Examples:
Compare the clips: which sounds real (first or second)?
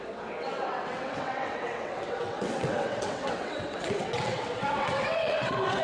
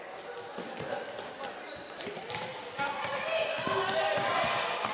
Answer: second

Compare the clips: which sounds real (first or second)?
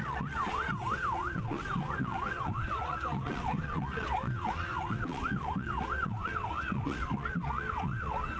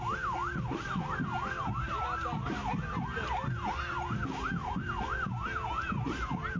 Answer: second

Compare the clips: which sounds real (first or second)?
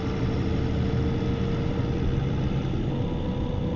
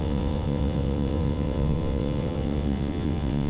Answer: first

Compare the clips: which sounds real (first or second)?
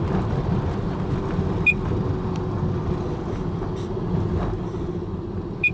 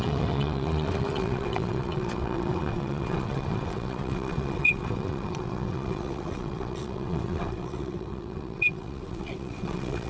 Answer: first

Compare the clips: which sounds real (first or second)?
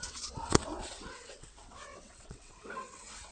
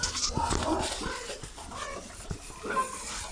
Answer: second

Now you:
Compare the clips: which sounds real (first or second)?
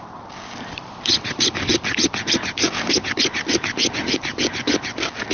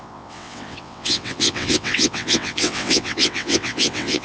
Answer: first